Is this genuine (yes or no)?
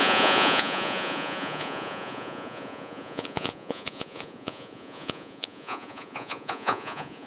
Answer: no